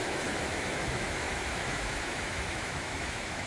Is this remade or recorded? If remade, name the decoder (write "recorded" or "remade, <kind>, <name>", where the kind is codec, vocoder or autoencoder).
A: remade, autoencoder, DAC-VAE